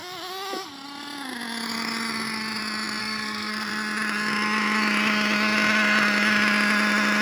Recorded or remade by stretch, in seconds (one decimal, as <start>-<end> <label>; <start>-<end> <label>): 0.0-3.0 recorded; 3.0-3.7 remade; 3.7-7.2 recorded